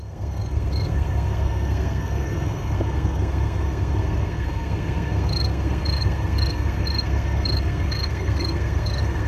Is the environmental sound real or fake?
fake